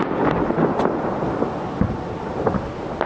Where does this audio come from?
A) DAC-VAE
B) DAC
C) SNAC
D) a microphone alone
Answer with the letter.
D